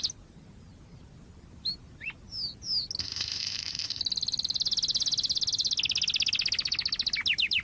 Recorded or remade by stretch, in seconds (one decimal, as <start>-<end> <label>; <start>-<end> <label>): 0.0-3.0 recorded; 3.0-4.0 remade; 4.0-7.6 recorded